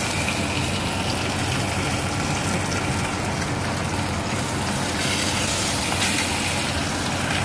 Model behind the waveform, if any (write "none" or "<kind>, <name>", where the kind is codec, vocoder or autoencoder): none